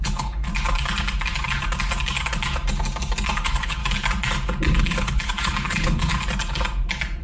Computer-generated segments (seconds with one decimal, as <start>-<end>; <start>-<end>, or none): 0.0-0.5; 3.4-3.8; 4.8-6.1